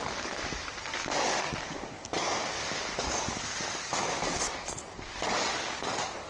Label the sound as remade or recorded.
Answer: remade